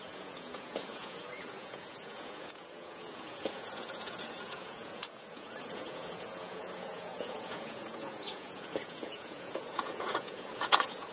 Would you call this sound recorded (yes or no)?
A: no